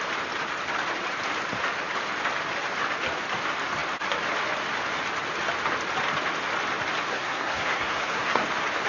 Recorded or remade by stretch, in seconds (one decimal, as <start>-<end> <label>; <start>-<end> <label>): 0.0-7.1 recorded; 7.1-8.4 remade; 8.4-8.9 recorded